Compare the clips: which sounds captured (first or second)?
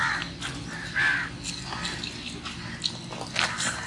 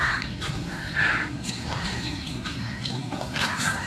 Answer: first